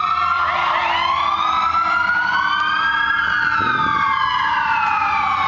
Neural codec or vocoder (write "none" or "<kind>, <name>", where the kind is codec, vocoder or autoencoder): none